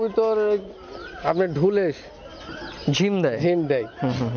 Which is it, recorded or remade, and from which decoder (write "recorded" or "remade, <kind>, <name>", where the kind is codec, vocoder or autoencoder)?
recorded